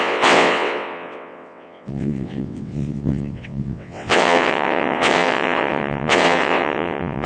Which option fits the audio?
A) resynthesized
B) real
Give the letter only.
A